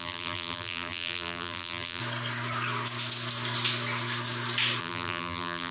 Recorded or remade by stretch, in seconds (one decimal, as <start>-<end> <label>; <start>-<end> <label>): 0.0-2.0 remade; 2.0-4.8 recorded; 4.8-5.7 remade